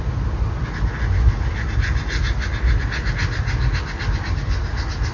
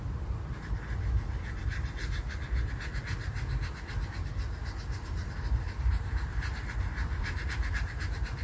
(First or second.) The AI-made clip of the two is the second